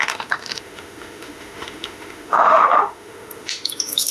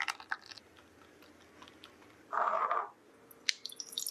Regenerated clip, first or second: first